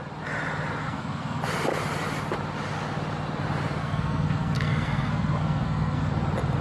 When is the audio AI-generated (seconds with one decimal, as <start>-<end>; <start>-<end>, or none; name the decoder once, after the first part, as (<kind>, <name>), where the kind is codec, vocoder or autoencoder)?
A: 0.8-1.4 (codec, SNAC); 3.8-6.1